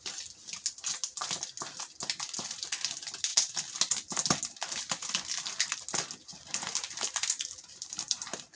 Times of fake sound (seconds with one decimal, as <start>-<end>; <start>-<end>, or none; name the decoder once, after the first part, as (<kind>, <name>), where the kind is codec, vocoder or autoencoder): 6.3-8.6 (vocoder, BigVGAN v2)